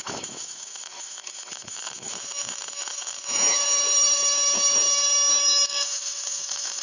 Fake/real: fake